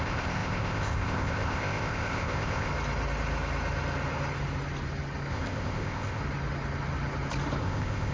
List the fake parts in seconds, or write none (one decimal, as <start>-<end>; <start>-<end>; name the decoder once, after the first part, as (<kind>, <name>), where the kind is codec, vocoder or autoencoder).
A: 0.0-2.7 (codec, ZipCodec); 5.3-6.2; 7.6-8.1